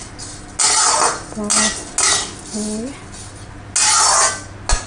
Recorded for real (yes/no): yes